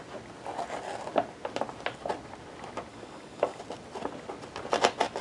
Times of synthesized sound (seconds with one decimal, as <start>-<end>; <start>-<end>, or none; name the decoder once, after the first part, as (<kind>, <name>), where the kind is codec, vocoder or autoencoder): 2.9-3.6 (codec, DAC)